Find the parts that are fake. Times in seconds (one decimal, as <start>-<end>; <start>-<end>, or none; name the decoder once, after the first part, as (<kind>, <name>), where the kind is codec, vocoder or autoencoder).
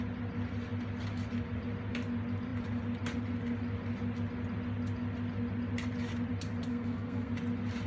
6.7-7.3 (codec, SNAC)